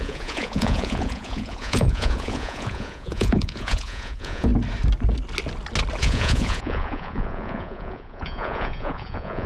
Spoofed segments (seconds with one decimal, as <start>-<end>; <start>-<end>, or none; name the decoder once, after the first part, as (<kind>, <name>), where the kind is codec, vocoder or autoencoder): 0.0-4.5 (vocoder, Vocos); 6.0-9.5